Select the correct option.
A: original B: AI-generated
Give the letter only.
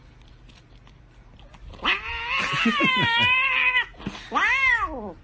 A